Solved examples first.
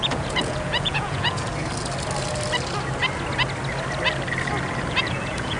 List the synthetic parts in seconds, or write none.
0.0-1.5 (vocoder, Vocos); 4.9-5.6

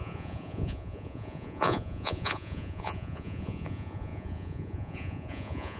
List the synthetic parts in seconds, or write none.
0.0-5.8 (vocoder, Vocos)

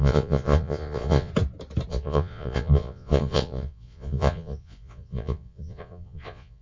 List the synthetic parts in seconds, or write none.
0.0-1.3 (vocoder, Vocos); 1.9-6.6